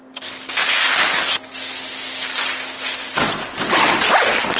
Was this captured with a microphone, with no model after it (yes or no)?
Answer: yes